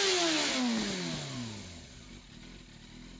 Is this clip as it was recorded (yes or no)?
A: yes